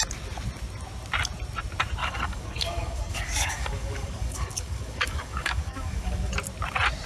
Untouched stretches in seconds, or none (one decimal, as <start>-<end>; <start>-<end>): 0.0-2.0; 6.3-7.1